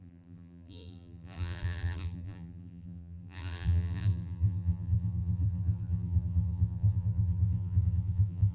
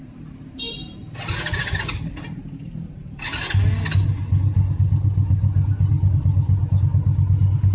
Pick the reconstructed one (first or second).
first